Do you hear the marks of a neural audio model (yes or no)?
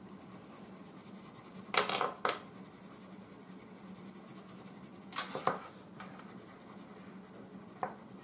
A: no